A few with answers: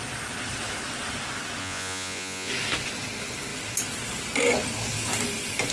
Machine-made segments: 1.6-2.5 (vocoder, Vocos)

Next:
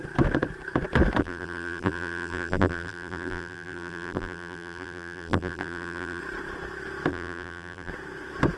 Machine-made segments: 1.2-6.2 (vocoder, BigVGAN v2); 7.1-7.9

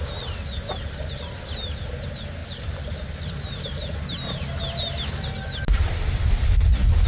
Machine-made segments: 2.4-4.5 (vocoder, BigVGAN v2)

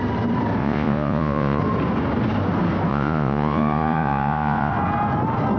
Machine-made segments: 0.6-1.6 (vocoder, Vocos); 2.9-4.7